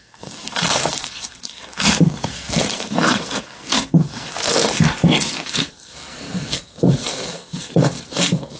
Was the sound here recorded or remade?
remade